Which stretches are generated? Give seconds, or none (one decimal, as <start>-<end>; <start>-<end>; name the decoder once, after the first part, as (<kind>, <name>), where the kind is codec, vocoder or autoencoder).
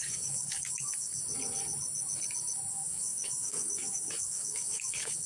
0.0-1.2 (codec, DAC); 2.7-5.3